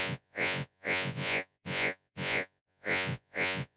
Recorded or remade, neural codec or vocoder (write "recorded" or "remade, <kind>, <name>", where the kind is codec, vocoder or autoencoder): remade, vocoder, Vocos